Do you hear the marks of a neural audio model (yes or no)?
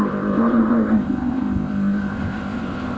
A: yes